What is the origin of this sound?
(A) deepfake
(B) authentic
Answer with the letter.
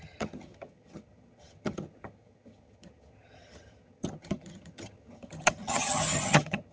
A